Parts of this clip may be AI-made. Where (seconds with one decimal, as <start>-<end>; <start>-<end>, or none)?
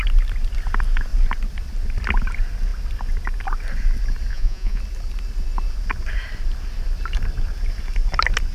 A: 4.3-4.8